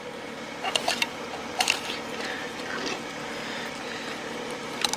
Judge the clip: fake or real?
real